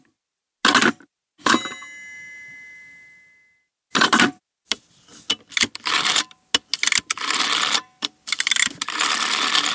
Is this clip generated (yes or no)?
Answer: no